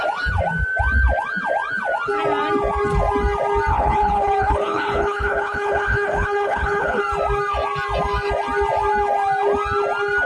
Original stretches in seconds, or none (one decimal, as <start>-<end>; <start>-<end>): 0.0-3.7; 7.0-10.2